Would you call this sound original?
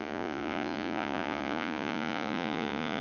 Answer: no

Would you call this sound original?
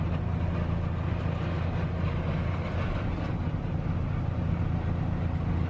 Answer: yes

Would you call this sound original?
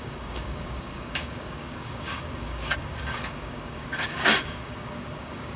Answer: no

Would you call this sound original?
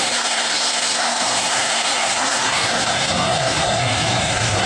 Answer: no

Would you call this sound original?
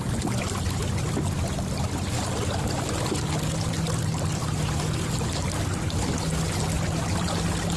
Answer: yes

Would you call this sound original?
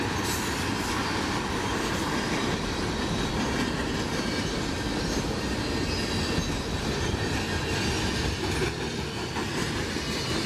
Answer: yes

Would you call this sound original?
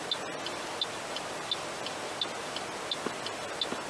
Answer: yes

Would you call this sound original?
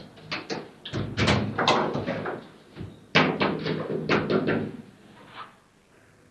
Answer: yes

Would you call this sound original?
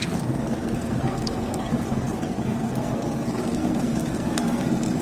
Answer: no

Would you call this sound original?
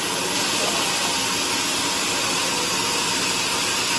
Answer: yes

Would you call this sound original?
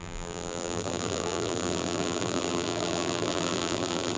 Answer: no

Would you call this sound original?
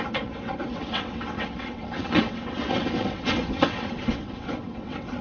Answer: no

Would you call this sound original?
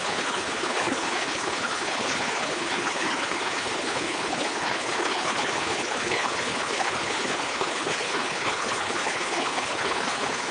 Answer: no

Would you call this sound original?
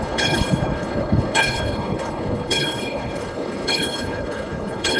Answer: no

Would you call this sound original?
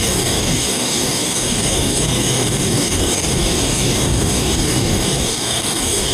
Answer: no